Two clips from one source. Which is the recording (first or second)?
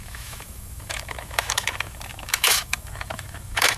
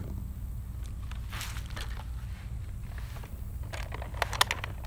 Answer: second